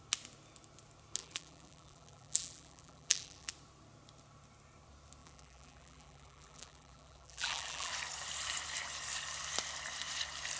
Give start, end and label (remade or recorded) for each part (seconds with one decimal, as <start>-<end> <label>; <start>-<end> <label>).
0.0-1.2 recorded; 1.2-3.5 remade; 3.5-5.2 recorded; 5.2-7.9 remade; 7.9-10.6 recorded